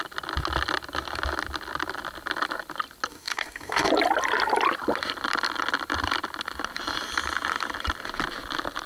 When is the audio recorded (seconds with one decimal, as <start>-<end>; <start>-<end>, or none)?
0.0-3.1; 3.9-8.9